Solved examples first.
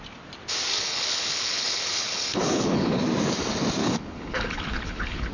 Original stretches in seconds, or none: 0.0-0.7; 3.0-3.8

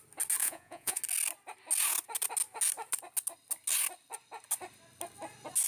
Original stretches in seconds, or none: 0.0-0.4; 1.0-5.7

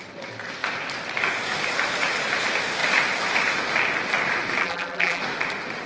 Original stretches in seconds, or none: 0.0-4.6; 5.2-5.9

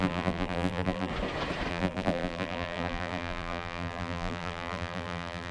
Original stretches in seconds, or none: 1.1-1.7

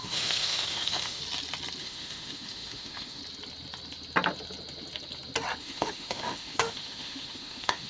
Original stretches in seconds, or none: 1.2-1.8; 3.2-5.6

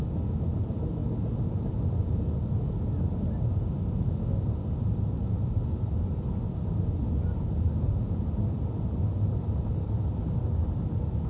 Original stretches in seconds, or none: 0.0-11.3

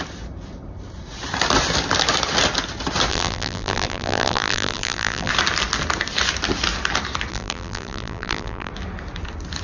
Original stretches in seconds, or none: 0.0-3.1; 5.3-7.3; 8.7-9.6